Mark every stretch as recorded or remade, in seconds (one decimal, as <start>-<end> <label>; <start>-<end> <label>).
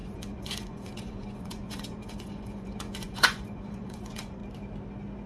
0.0-4.4 remade; 4.4-5.3 recorded